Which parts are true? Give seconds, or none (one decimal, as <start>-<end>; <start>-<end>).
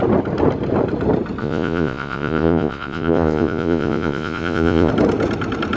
0.0-1.4; 4.9-5.8